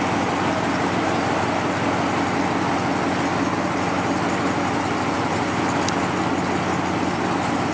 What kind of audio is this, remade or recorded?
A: recorded